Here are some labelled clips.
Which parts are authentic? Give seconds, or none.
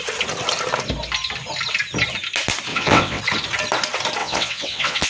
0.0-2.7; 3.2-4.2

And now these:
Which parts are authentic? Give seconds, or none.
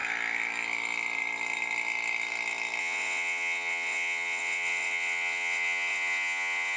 0.0-2.8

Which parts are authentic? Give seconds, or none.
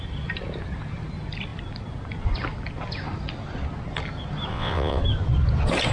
0.0-4.5; 5.0-5.9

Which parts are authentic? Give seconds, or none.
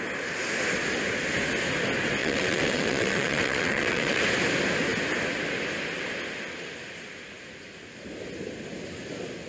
0.0-2.2; 4.2-9.5